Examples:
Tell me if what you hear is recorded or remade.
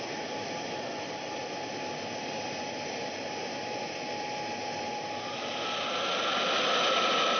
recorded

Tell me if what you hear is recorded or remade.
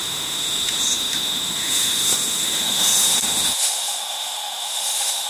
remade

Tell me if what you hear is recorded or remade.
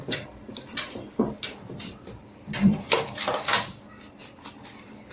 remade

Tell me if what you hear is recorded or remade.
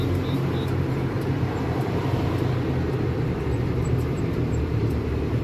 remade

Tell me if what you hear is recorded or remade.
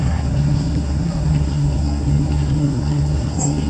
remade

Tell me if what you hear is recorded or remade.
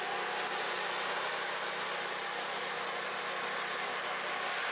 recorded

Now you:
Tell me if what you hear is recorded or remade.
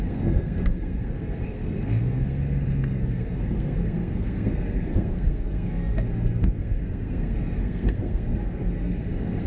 remade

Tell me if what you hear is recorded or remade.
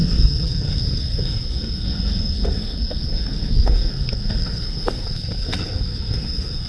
remade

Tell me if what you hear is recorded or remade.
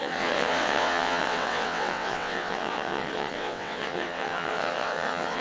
remade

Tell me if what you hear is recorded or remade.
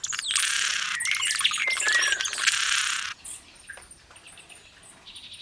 recorded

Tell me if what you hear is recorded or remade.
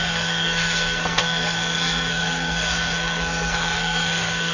remade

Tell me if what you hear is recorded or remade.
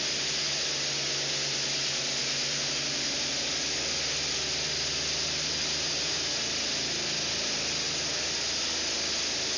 recorded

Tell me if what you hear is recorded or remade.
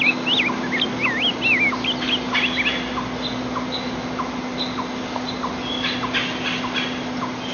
recorded